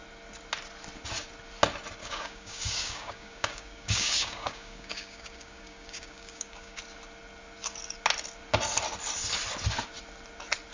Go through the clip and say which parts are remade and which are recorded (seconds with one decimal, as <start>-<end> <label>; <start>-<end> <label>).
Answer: 0.0-2.0 recorded; 2.0-6.8 remade; 6.8-10.7 recorded